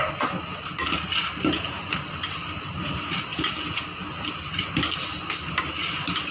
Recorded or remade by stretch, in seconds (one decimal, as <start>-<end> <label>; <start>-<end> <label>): 0.0-6.3 recorded